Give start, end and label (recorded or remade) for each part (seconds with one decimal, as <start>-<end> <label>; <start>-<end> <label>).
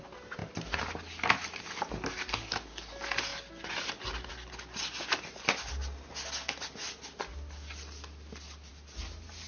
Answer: 0.0-9.5 recorded